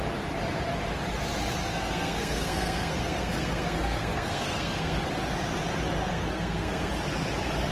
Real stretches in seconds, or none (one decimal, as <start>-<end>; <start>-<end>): 0.0-1.7; 5.0-6.1; 6.9-7.7